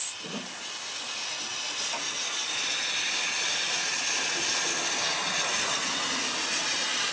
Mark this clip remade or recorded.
recorded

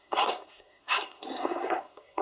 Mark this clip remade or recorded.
remade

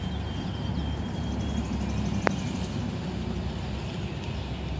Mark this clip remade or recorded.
recorded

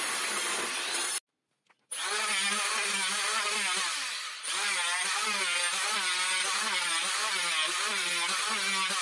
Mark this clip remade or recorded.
recorded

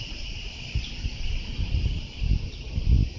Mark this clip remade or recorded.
recorded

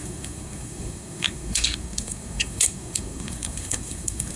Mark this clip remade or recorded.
remade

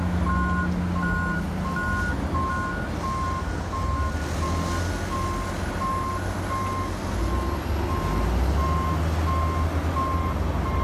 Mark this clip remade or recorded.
recorded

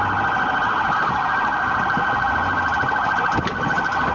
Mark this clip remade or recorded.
recorded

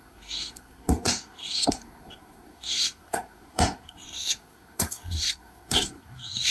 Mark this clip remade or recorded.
remade